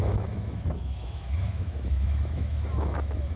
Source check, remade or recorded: remade